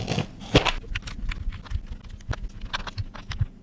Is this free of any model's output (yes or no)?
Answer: yes